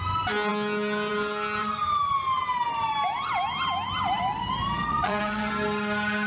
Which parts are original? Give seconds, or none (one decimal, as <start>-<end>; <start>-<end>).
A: 0.0-4.9; 5.5-6.3